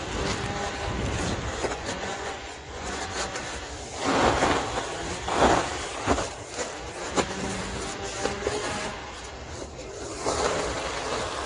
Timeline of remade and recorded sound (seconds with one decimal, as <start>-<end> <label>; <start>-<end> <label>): 0.0-1.6 recorded; 1.6-3.0 remade; 3.0-11.5 recorded